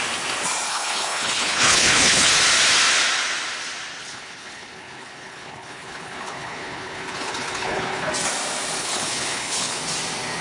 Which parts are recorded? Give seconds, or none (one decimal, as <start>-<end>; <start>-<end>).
0.0-0.7; 2.3-4.0; 8.1-8.8; 9.8-10.4